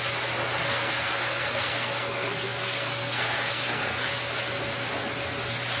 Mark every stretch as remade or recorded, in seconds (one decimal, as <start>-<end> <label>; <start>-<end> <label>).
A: 0.0-0.6 recorded; 0.6-4.1 remade; 4.1-5.8 recorded